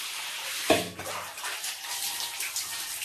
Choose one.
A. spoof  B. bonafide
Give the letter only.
B